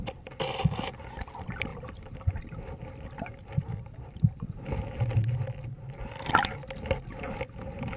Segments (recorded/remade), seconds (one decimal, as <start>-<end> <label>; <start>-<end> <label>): 0.0-1.7 recorded; 1.7-2.4 remade; 2.4-8.0 recorded